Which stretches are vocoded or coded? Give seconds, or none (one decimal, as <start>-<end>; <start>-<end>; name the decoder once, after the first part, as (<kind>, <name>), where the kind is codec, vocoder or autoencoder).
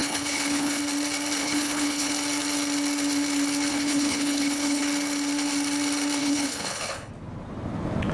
0.0-0.8 (codec, HILCodec); 1.4-2.1; 3.7-4.8; 6.2-7.1